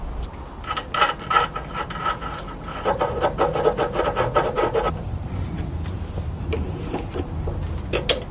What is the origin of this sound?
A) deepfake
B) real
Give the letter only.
B